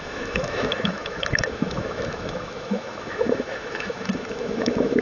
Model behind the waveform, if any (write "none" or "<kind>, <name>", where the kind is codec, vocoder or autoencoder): autoencoder, DAC-VAE